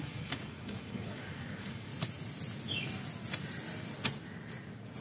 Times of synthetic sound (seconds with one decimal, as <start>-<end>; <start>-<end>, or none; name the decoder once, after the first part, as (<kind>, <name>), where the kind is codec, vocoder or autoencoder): 0.0-1.9 (codec, DAC)